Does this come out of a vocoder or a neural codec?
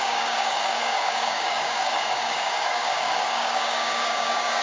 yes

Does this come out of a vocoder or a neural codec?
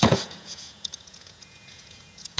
yes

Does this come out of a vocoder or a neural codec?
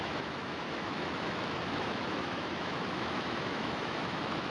yes